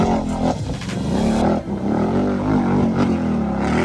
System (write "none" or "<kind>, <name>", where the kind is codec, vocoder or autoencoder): none